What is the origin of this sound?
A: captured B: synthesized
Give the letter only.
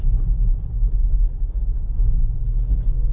A